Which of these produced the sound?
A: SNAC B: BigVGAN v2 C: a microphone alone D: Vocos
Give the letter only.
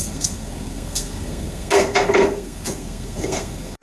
A